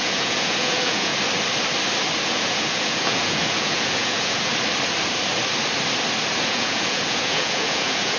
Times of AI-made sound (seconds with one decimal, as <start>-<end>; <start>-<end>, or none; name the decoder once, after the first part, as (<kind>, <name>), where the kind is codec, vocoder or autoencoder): 0.0-1.1 (vocoder, Vocos); 2.2-4.5; 6.4-8.2